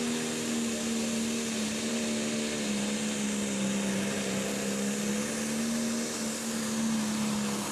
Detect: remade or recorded recorded